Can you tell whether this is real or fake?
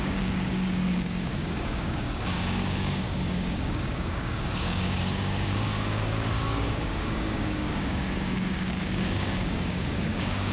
fake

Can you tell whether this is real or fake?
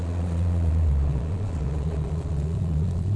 fake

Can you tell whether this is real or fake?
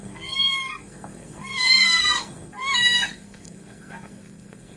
fake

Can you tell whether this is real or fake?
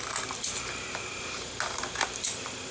real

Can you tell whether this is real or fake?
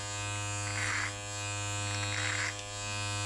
real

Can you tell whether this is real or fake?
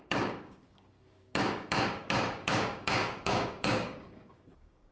fake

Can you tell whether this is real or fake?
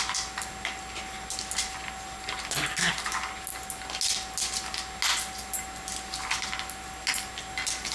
real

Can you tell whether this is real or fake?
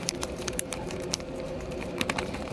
fake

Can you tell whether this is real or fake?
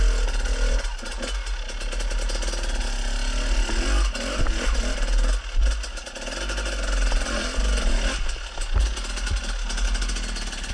real